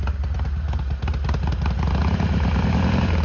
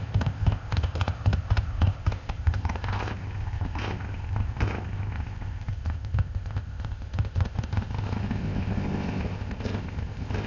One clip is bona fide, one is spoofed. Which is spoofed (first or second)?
second